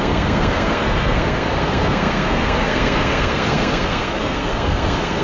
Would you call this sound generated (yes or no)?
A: yes